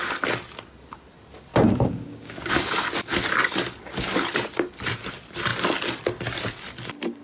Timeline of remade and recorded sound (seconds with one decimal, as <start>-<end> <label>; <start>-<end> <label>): 0.0-1.5 recorded; 1.5-2.5 remade; 2.5-7.2 recorded